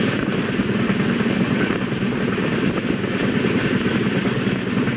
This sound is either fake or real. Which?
real